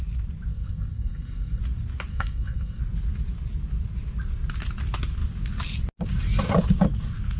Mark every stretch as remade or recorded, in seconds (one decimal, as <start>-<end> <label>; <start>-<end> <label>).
0.0-0.5 recorded; 0.5-1.6 remade; 1.6-2.1 recorded; 2.1-2.8 remade; 2.8-7.4 recorded